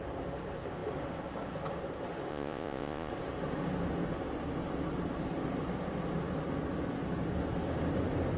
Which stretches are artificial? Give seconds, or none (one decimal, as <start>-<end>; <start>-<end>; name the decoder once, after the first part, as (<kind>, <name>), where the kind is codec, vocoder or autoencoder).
2.3-3.1 (vocoder, Vocos)